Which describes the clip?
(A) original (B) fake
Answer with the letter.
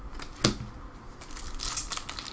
A